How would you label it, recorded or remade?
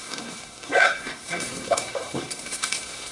remade